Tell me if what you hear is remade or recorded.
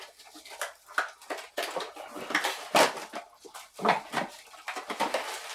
recorded